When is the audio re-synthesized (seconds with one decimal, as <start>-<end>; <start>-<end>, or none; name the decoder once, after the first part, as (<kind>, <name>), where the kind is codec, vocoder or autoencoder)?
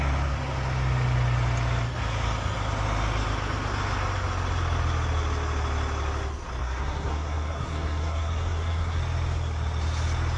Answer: 6.6-9.0 (codec, SNAC)